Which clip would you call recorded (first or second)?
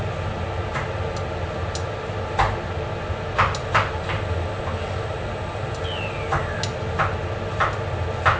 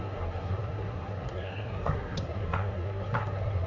first